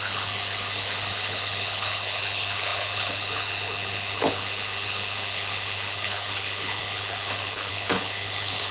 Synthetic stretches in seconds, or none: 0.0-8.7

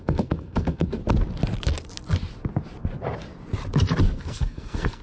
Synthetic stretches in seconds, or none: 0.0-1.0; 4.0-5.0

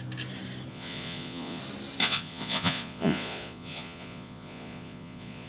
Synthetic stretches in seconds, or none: 0.7-1.6; 2.0-5.5

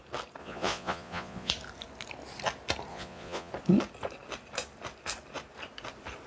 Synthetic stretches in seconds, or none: 0.4-1.5; 2.9-3.5

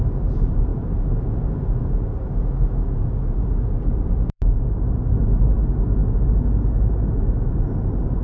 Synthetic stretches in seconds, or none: none

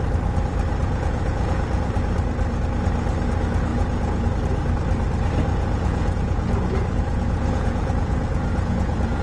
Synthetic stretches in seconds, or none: 0.8-2.0; 3.7-4.3; 5.5-9.2

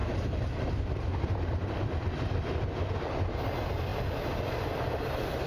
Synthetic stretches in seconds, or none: 0.0-3.3

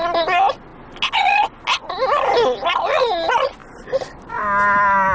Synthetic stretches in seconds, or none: 3.6-4.4